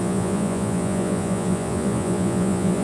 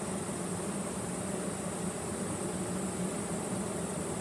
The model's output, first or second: first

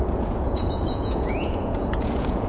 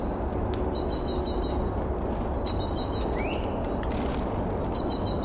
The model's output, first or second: first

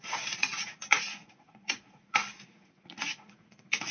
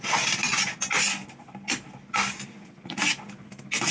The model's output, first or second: first